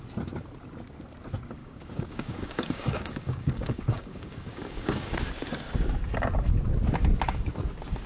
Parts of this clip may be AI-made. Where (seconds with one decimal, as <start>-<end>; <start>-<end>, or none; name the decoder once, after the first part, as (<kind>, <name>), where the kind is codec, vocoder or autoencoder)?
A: 1.6-5.3 (codec, DAC)